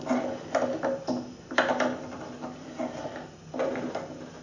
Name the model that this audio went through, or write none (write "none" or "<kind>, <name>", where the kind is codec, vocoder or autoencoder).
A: none